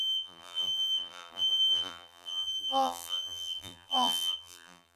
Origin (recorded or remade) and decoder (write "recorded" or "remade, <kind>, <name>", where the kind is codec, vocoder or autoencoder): remade, vocoder, BigVGAN v2